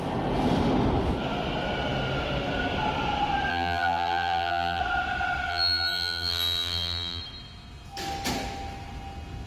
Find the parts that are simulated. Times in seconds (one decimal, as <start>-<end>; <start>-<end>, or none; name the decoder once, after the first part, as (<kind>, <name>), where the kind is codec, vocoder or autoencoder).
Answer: 3.5-4.8 (vocoder, BigVGAN v2); 5.5-7.2